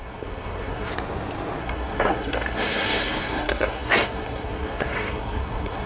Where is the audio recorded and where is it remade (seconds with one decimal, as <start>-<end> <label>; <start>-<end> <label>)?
0.0-0.9 remade; 0.9-1.6 recorded; 1.6-5.9 remade